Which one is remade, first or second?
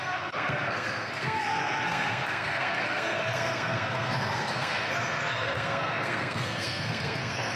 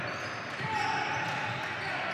first